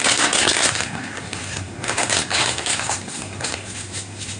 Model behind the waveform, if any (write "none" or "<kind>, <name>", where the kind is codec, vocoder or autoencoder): codec, SNAC